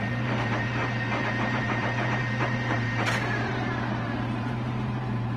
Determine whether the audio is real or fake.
fake